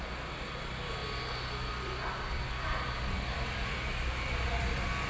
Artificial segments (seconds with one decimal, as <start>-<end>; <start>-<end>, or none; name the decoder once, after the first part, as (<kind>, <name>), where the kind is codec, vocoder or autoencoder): none